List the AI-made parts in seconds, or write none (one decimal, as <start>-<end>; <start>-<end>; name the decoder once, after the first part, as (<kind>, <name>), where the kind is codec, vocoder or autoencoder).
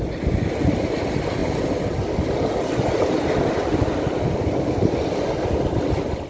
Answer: none